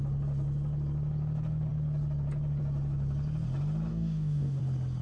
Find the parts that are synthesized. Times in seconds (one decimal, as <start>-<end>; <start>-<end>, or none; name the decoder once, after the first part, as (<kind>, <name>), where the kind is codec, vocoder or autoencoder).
3.9-4.6 (codec, DAC)